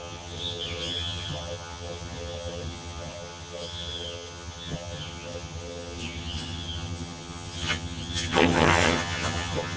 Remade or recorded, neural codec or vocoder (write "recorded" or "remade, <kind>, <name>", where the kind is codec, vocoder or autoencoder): remade, vocoder, HiFi-GAN